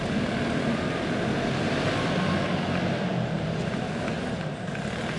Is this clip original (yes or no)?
yes